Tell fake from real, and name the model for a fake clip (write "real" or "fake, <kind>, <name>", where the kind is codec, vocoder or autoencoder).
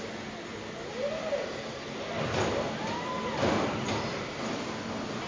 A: real